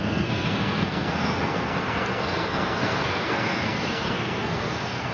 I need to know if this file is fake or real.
fake